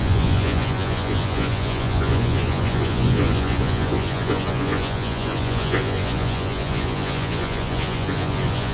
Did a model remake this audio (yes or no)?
yes